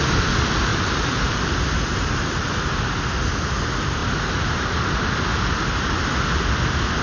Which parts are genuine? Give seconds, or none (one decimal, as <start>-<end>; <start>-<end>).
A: 0.0-0.7; 2.6-7.0